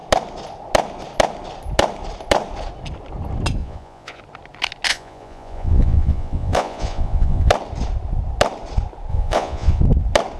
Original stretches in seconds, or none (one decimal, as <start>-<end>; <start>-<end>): 0.0-3.6; 4.2-4.9; 7.5-9.1; 9.8-10.4